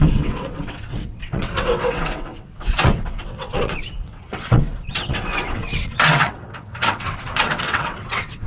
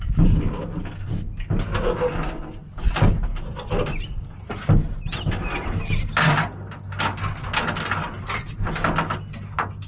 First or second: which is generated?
first